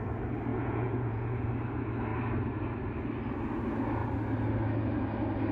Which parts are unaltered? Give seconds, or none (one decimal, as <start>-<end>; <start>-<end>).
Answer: 0.0-0.5; 1.5-5.5